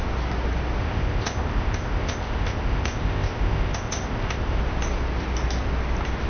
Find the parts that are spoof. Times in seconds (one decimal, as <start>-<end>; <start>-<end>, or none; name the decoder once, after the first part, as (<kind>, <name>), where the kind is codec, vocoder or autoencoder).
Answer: 0.8-4.6 (codec, ZipCodec)